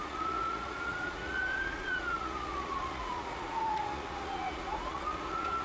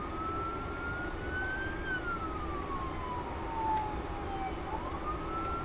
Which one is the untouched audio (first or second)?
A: second